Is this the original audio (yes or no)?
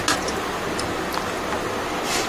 yes